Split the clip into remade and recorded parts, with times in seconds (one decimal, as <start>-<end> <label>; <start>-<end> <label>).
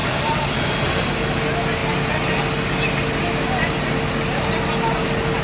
0.0-0.6 remade; 0.6-5.4 recorded